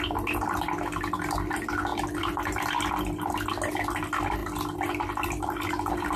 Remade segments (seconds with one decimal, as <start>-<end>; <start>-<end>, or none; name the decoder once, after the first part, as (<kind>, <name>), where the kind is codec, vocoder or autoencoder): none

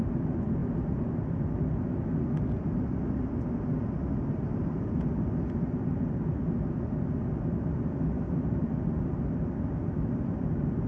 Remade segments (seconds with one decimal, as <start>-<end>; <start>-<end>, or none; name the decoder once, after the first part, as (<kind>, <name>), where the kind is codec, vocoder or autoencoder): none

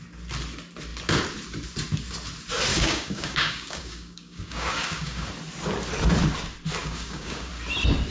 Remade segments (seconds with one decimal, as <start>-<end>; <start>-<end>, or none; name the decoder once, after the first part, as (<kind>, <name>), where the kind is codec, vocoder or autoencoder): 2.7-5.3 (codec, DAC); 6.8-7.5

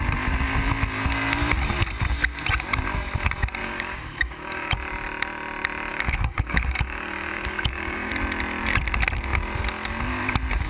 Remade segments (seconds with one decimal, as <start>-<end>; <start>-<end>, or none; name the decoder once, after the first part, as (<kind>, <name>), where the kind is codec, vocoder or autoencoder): 3.6-4.7 (codec, DAC); 5.9-8.1

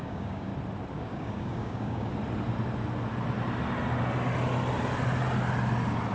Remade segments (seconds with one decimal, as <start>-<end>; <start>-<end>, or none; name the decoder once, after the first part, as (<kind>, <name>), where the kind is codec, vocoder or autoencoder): 0.0-0.5 (codec, DAC); 1.0-2.1

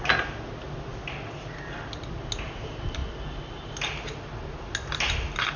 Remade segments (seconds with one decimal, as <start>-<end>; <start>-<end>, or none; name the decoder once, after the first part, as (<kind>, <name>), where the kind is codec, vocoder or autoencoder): none